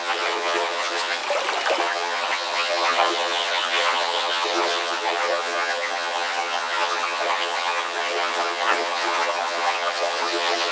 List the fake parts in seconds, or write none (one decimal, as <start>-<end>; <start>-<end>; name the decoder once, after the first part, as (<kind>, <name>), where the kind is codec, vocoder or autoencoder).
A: 0.0-1.2 (vocoder, HiFi-GAN); 1.8-10.7